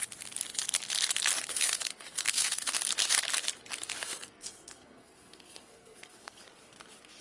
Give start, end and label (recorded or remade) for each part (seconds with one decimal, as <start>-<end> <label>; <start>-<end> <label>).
0.0-1.5 recorded; 1.5-2.7 remade; 2.7-4.0 recorded; 4.0-6.4 remade; 6.4-7.2 recorded